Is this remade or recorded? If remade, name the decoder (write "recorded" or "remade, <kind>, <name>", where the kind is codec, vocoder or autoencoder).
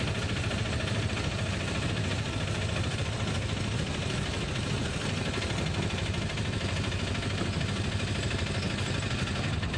recorded